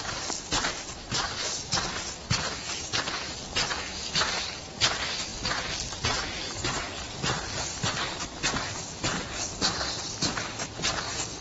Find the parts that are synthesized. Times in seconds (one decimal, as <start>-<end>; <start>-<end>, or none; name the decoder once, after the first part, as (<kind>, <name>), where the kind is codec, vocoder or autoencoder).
none